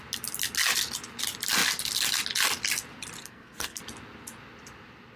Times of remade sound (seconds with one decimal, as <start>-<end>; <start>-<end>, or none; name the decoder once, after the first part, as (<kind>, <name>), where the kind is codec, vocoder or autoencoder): 3.2-3.8 (codec, SNAC)